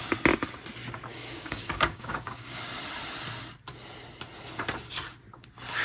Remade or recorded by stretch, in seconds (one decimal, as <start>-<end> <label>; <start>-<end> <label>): 0.0-1.1 recorded; 1.1-2.6 remade; 2.6-5.8 recorded